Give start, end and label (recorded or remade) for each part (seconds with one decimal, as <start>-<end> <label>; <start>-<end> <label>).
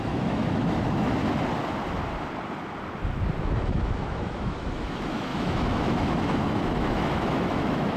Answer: 0.0-1.2 remade; 1.2-3.4 recorded; 3.4-8.0 remade